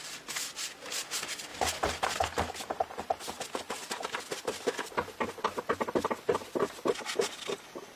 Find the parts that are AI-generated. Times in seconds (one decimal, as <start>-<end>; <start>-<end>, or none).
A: none